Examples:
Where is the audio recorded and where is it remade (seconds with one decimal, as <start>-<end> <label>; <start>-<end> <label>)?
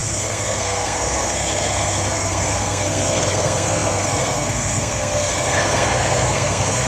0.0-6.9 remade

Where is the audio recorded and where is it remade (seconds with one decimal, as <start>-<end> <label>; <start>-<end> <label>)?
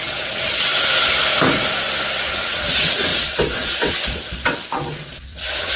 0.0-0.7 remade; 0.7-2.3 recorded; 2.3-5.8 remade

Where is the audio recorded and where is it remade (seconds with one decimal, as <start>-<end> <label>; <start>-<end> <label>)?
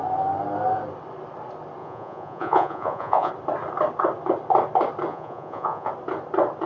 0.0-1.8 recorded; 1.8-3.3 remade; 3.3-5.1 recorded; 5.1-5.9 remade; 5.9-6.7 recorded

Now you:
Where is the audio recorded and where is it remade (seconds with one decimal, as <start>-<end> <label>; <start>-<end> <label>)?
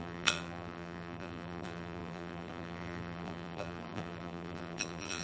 0.0-5.2 remade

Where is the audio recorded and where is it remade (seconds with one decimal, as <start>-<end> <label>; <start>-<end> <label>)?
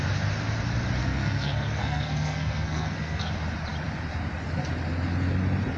0.0-1.0 recorded; 1.0-3.3 remade; 3.3-5.8 recorded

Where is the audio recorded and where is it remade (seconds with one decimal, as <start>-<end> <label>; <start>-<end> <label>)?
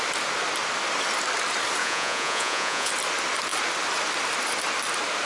0.0-1.8 recorded; 1.8-2.9 remade; 2.9-5.3 recorded